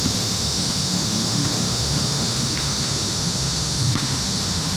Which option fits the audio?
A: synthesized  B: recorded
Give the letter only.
A